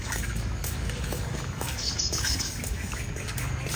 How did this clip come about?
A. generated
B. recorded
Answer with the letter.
A